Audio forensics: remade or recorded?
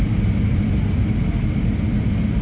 recorded